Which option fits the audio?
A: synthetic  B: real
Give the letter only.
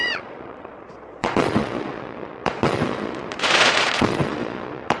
A